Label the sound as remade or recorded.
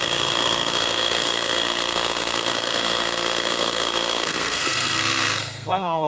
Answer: remade